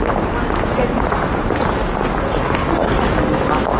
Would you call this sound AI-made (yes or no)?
no